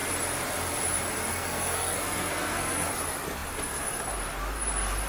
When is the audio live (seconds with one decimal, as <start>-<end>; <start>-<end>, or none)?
0.0-1.3; 2.9-5.1